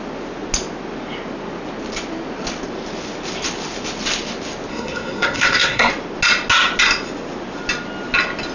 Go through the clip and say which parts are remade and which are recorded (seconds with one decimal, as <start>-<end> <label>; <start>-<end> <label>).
0.0-4.7 recorded; 4.7-5.9 remade; 5.9-8.5 recorded